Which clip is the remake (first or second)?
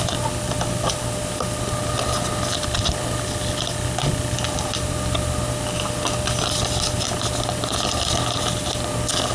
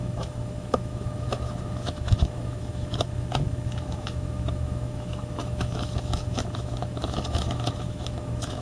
second